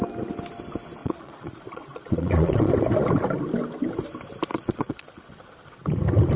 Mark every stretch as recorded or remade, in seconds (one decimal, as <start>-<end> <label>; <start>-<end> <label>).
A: 0.0-1.0 recorded; 1.0-2.7 remade; 2.7-4.5 recorded; 4.5-5.2 remade; 5.2-6.4 recorded